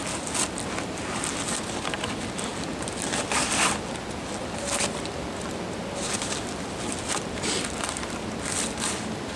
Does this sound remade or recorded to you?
recorded